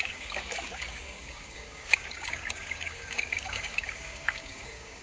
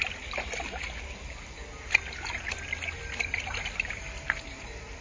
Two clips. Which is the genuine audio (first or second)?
second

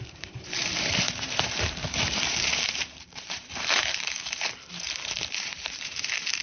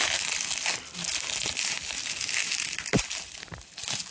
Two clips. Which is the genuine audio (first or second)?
second